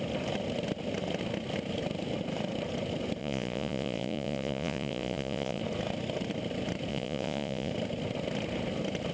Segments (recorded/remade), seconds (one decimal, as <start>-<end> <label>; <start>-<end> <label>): 0.0-3.2 recorded; 3.2-5.6 remade; 5.6-6.9 recorded; 6.9-7.7 remade; 7.7-9.1 recorded